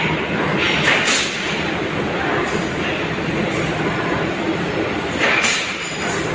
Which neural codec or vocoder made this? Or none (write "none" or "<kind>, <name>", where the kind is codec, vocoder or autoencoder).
none